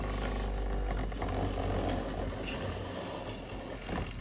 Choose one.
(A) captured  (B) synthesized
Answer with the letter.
A